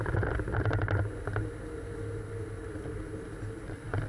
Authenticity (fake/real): real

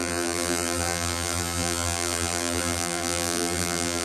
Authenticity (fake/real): fake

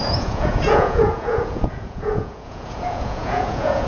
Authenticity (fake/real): fake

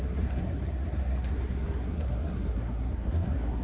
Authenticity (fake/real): fake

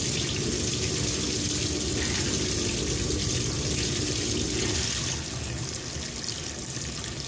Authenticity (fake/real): real